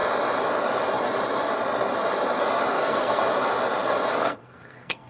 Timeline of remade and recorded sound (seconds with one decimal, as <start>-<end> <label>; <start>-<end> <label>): 0.0-2.7 recorded; 2.7-3.2 remade; 3.2-4.2 recorded; 4.2-5.1 remade

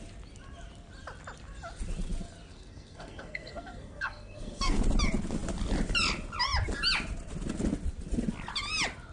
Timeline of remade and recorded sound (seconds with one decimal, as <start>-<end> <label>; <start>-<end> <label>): 0.0-2.5 recorded; 2.5-4.8 remade; 4.8-9.1 recorded

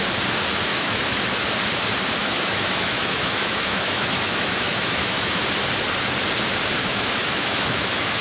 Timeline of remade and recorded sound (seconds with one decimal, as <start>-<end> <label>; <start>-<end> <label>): 0.0-0.7 recorded; 0.7-1.2 remade; 1.2-2.2 recorded; 2.2-5.4 remade; 5.4-6.8 recorded; 6.8-8.2 remade

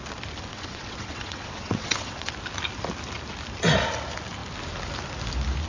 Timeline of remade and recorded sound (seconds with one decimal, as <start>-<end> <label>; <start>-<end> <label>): 0.0-0.5 recorded; 0.5-2.3 remade; 2.3-5.7 recorded